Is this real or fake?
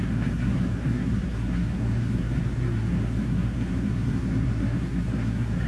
fake